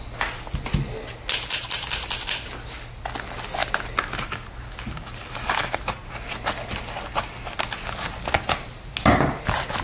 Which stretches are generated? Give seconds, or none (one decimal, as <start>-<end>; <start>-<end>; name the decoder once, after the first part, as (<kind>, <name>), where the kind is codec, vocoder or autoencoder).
none